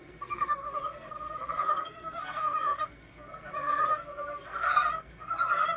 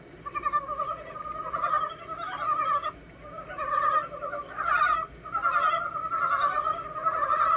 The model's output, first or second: first